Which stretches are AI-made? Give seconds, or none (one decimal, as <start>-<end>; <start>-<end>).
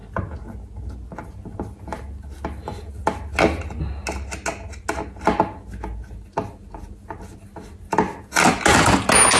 none